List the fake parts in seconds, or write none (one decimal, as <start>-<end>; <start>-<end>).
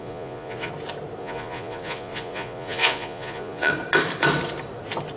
0.0-0.7; 1.2-3.7